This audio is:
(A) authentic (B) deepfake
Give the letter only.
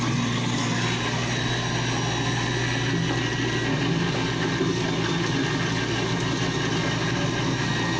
A